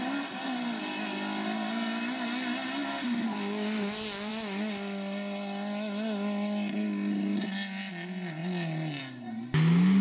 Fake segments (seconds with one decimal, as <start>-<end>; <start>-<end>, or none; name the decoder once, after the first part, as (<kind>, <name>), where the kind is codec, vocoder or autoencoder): none